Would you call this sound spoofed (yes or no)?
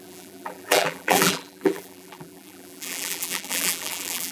yes